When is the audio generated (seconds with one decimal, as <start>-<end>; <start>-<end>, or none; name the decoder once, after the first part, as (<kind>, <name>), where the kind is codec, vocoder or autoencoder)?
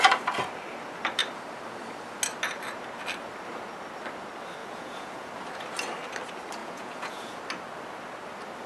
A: 4.6-5.3 (vocoder, Vocos); 6.6-7.4